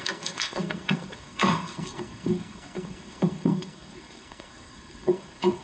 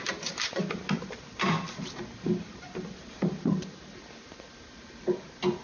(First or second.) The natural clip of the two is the second